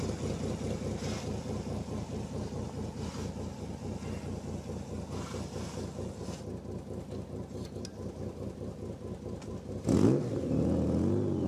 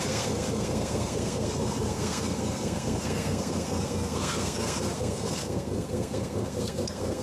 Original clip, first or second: first